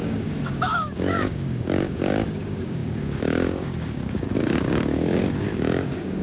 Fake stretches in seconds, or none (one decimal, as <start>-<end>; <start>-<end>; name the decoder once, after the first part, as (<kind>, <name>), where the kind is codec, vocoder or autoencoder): 0.0-6.2 (codec, DAC)